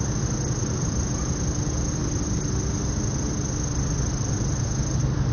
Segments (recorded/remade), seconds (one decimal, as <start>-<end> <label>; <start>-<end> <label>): 0.0-5.3 recorded